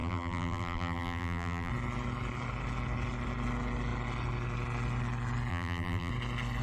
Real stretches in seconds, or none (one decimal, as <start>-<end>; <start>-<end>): 1.7-5.5; 6.1-6.6